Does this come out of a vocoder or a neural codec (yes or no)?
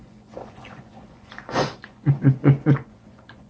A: yes